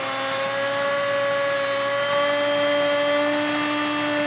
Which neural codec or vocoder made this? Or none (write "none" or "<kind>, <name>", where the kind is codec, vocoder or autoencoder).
none